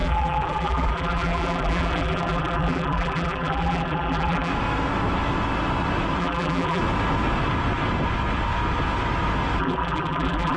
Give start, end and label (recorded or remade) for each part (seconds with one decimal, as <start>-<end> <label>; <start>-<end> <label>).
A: 0.0-4.5 remade; 4.5-6.2 recorded; 6.2-6.8 remade; 6.8-9.6 recorded; 9.6-10.6 remade